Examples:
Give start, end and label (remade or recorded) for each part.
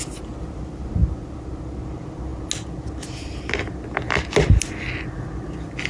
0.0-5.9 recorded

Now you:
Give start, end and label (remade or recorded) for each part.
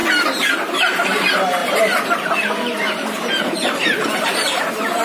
0.0-1.6 recorded; 1.6-4.6 remade; 4.6-5.0 recorded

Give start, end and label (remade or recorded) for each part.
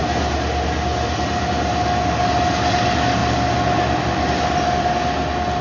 0.0-5.6 recorded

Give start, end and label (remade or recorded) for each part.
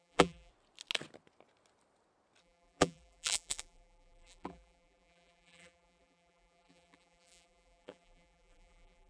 0.0-0.5 remade; 0.5-2.4 recorded; 2.4-9.1 remade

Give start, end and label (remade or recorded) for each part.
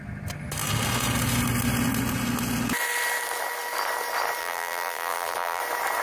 0.0-4.4 recorded; 4.4-5.6 remade; 5.6-6.0 recorded